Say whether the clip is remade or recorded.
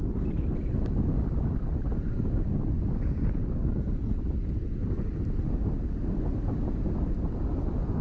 recorded